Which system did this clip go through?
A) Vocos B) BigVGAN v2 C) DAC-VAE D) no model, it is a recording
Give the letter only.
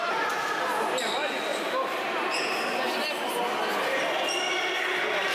D